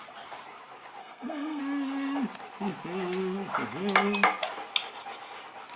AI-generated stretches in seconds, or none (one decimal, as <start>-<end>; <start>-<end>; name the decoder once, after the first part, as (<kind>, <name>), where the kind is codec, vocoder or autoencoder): 1.0-1.6 (codec, SNAC)